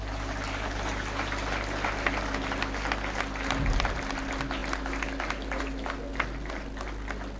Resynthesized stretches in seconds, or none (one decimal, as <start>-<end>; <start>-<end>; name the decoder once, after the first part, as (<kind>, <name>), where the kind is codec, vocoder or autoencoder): none